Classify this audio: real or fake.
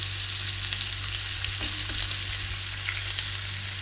real